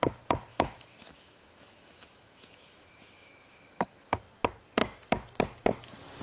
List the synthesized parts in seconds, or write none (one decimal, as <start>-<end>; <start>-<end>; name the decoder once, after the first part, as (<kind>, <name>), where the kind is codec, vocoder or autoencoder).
0.5-4.2 (autoencoder, DAC-VAE)